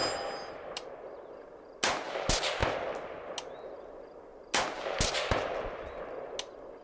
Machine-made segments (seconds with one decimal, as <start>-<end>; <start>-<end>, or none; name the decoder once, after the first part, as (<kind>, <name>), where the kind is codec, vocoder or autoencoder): none